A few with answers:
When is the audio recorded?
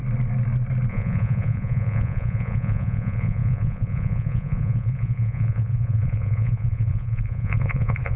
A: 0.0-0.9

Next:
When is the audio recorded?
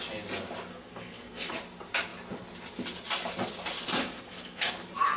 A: 0.0-0.7; 1.5-4.0; 4.7-5.2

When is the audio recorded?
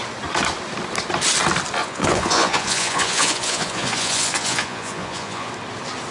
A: 0.0-1.8; 5.5-6.1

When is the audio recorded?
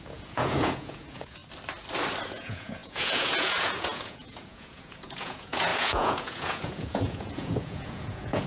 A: 1.4-2.3